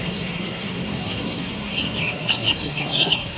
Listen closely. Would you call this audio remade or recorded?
remade